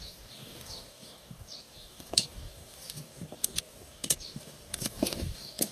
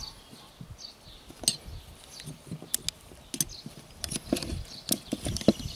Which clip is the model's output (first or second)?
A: first